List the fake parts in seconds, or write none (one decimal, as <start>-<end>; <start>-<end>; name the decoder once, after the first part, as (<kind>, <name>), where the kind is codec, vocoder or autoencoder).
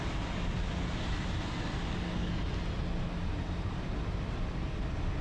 1.8-2.3 (codec, DAC)